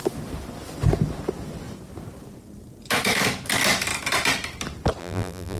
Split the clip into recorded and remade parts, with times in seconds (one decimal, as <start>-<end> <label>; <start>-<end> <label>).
0.0-5.0 recorded; 5.0-5.6 remade